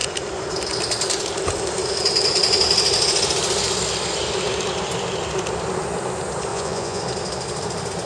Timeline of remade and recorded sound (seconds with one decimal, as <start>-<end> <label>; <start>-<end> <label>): 0.0-6.5 recorded; 6.5-7.0 remade; 7.0-8.1 recorded